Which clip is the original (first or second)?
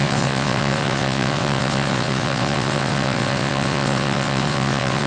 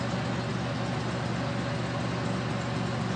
second